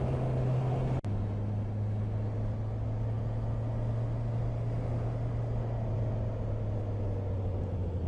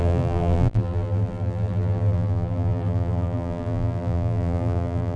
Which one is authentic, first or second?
first